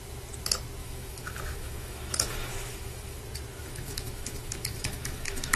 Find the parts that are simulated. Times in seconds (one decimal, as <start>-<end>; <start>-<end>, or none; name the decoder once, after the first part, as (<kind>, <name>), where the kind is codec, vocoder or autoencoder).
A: 0.8-3.2 (autoencoder, DAC-VAE); 3.6-5.6